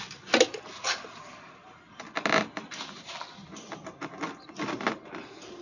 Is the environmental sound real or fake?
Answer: real